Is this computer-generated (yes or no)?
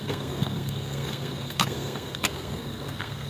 yes